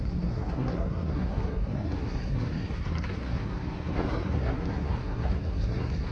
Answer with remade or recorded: remade